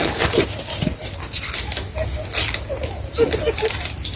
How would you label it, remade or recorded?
recorded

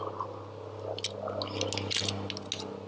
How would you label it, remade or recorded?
recorded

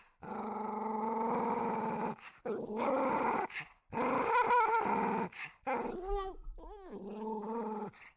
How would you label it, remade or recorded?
recorded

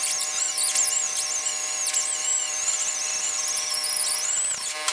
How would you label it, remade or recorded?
recorded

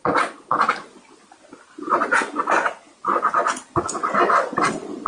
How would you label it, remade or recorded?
recorded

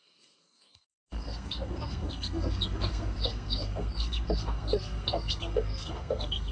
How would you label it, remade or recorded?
remade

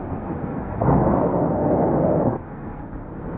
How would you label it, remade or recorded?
remade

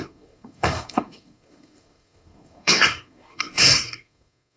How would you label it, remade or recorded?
remade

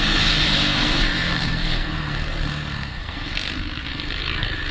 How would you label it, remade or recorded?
remade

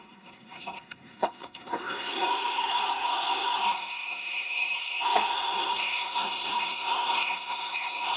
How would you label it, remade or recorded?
remade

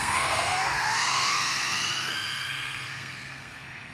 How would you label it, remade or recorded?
remade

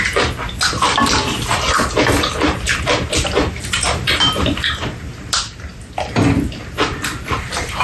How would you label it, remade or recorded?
recorded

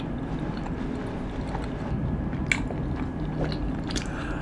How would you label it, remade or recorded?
recorded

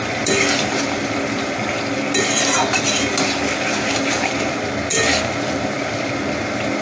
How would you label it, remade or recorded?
recorded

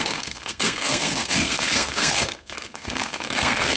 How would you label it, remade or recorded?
remade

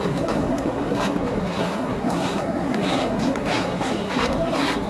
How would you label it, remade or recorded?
remade